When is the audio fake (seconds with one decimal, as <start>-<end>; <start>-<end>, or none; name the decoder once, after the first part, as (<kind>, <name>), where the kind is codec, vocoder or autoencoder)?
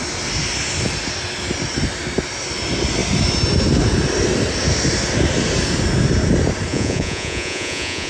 6.7-8.1 (vocoder, Vocos)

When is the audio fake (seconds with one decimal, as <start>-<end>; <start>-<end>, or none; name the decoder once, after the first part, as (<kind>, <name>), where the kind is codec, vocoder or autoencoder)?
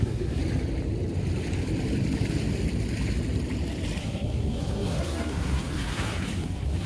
0.0-0.4 (codec, SNAC); 4.0-6.9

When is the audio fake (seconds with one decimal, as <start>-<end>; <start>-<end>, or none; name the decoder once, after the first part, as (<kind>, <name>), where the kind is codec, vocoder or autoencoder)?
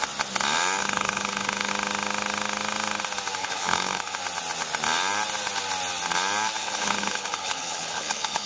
0.8-1.7 (codec, HILCodec); 3.4-4.2; 6.6-8.5